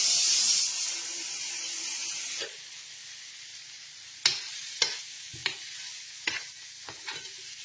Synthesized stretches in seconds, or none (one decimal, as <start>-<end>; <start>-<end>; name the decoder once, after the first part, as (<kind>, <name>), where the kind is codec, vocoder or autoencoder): none